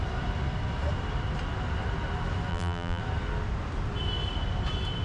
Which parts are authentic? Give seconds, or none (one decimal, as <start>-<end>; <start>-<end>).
0.0-2.5; 3.0-5.0